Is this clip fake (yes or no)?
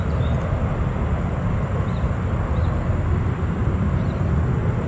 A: no